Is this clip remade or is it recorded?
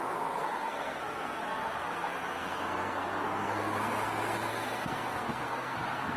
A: remade